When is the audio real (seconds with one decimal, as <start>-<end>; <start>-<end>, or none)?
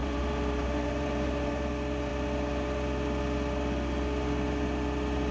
1.7-5.3